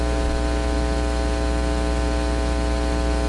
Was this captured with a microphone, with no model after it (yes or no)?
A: yes